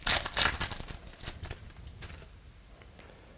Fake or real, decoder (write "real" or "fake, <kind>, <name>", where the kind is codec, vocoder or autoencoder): real